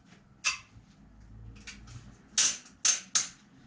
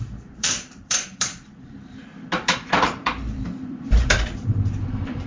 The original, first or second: first